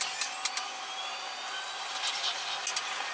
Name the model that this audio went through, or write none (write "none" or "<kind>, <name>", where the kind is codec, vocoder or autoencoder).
none